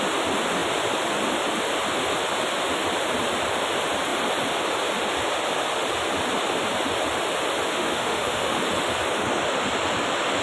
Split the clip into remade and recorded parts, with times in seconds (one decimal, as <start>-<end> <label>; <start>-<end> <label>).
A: 0.0-7.7 recorded; 7.7-8.6 remade; 8.6-10.4 recorded